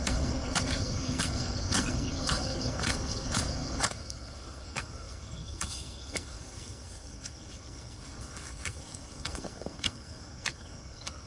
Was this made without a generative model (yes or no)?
no